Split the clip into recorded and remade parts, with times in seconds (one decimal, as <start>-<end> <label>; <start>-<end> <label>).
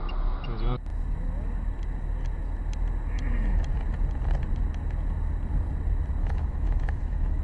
0.0-6.2 recorded; 6.2-7.4 remade